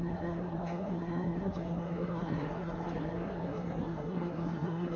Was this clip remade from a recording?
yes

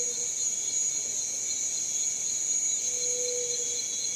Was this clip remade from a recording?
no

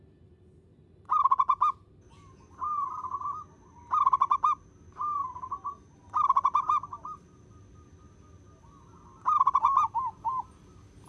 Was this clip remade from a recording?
no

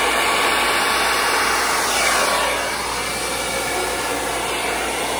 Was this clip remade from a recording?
no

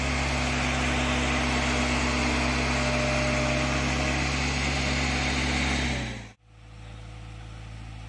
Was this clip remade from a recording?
no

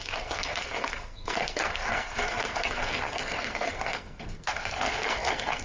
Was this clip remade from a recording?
yes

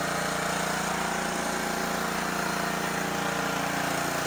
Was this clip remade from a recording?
no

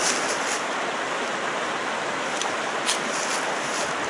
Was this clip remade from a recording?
no